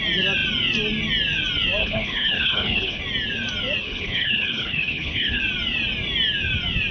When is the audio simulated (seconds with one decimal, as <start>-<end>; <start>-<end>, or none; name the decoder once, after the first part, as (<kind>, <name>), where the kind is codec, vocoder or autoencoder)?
1.8-3.0 (codec, HILCodec); 3.8-5.4

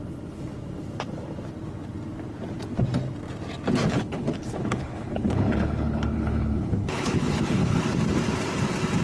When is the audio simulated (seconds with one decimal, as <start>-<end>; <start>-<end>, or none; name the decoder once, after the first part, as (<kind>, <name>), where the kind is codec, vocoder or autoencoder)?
3.8-7.8 (codec, HILCodec)